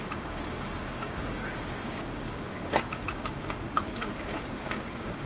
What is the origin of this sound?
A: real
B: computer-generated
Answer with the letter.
B